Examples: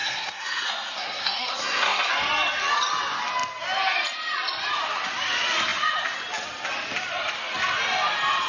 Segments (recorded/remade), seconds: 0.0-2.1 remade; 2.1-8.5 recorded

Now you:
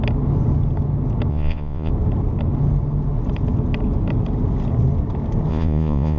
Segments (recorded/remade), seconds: 0.0-1.3 recorded; 1.3-1.9 remade; 1.9-5.5 recorded; 5.5-6.2 remade

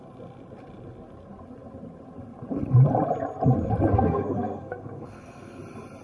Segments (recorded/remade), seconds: 0.0-3.9 recorded; 3.9-5.6 remade; 5.6-6.0 recorded

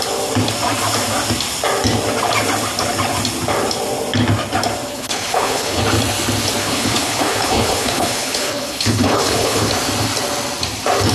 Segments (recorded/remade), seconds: 0.0-4.9 recorded; 4.9-5.8 remade; 5.8-6.6 recorded; 6.6-9.7 remade; 9.7-11.1 recorded

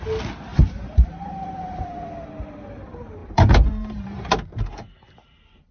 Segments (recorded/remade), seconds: 0.0-0.5 recorded; 0.5-1.8 remade; 1.8-3.2 recorded; 3.2-4.3 remade; 4.3-5.7 recorded

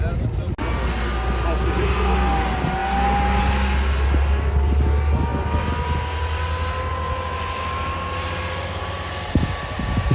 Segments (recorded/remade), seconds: 0.0-10.1 recorded

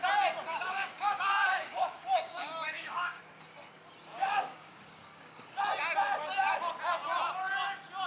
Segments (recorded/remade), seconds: 0.0-0.5 recorded; 0.5-3.2 remade; 3.2-4.1 recorded; 4.1-5.6 remade; 5.6-8.1 recorded

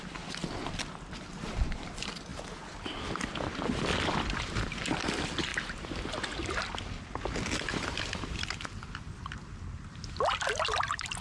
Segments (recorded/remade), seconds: 0.0-11.2 recorded